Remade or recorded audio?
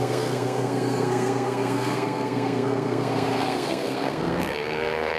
remade